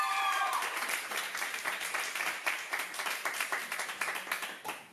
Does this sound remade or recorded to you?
remade